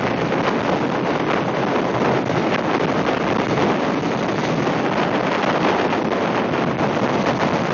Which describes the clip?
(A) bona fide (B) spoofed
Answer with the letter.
A